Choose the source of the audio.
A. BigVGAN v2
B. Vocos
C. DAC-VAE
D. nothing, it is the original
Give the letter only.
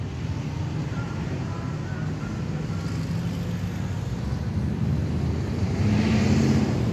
D